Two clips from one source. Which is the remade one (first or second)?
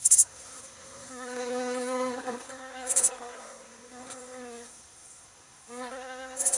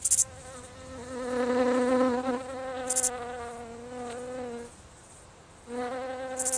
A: first